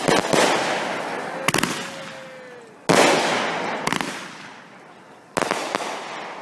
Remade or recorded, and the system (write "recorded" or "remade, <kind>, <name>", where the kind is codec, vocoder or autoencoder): recorded